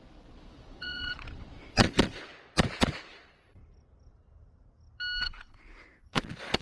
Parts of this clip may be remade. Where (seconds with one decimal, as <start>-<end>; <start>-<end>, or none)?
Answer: 0.0-2.3; 2.9-3.6; 5.2-6.6